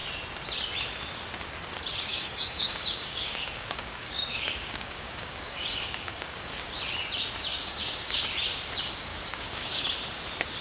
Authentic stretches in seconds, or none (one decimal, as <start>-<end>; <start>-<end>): 0.0-2.1; 6.7-7.5; 8.2-9.1; 9.8-10.6